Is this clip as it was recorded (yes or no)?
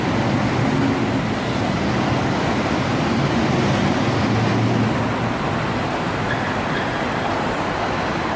yes